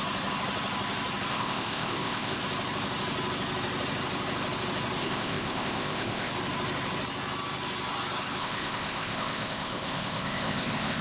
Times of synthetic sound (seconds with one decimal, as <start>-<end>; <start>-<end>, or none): 1.3-2.4; 5.0-6.3; 8.4-11.0